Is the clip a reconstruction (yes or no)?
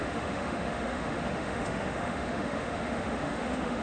yes